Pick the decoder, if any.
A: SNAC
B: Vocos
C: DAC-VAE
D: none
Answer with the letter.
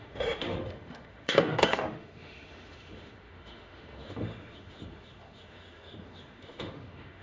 C